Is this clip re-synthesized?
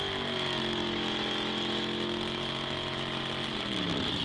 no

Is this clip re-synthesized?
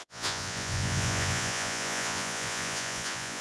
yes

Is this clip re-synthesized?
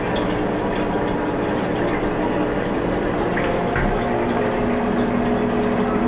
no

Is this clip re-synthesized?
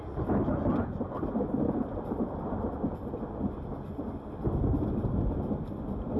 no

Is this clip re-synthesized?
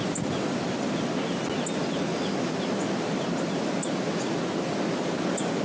no